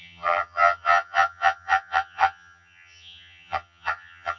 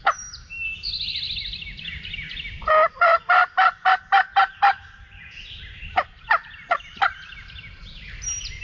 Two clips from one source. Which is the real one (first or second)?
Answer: second